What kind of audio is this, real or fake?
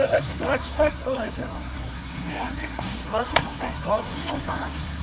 fake